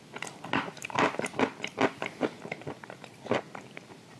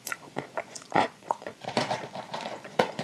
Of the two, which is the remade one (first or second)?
second